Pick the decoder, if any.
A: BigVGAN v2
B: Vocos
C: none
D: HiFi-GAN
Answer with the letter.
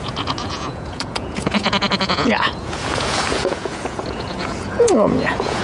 B